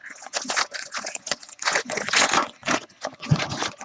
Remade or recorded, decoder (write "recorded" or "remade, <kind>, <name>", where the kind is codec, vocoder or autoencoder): remade, vocoder, Vocos